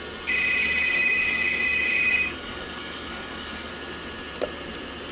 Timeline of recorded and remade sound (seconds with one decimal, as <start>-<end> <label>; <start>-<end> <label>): 0.0-0.6 recorded; 0.6-3.7 remade; 3.7-5.1 recorded